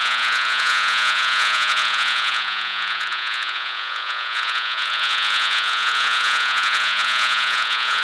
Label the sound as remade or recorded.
remade